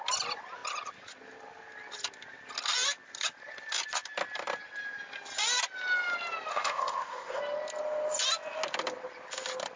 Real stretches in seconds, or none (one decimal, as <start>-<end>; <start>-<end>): 0.0-6.5; 7.4-9.8